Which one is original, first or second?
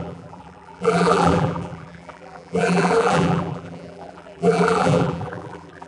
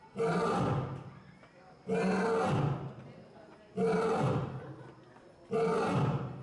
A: second